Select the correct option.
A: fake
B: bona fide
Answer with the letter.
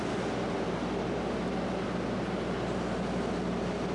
B